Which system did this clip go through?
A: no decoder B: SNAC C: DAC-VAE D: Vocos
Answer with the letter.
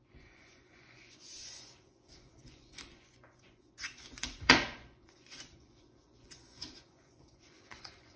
D